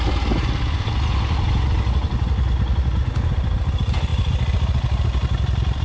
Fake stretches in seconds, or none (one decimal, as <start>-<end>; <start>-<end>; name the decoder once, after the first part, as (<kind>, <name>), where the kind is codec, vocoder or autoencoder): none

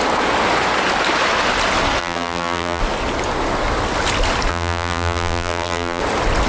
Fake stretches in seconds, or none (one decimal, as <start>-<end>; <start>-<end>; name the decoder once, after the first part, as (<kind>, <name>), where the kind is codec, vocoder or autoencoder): 2.0-2.8 (vocoder, BigVGAN v2); 4.5-6.0

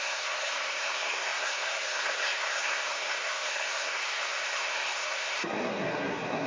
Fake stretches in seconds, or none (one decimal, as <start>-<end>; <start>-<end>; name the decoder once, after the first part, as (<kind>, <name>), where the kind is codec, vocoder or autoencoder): 0.0-6.5 (codec, SNAC)

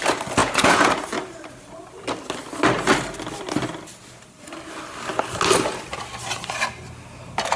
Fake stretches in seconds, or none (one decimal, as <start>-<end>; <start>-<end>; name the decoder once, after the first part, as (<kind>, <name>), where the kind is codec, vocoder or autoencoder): 0.4-0.9 (vocoder, Vocos)

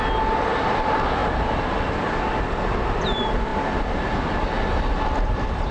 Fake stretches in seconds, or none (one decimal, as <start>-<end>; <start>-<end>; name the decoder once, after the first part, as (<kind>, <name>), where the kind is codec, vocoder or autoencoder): 0.0-1.2 (vocoder, BigVGAN v2); 3.0-3.5; 5.3-5.7